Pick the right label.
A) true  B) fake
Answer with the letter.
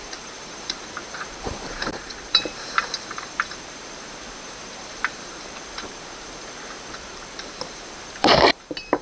B